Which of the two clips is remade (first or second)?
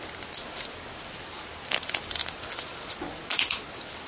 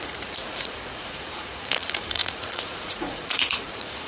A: second